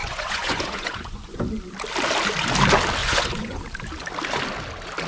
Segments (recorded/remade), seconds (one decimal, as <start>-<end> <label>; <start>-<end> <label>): 0.0-1.4 remade; 1.4-3.0 recorded; 3.0-3.6 remade; 3.6-5.1 recorded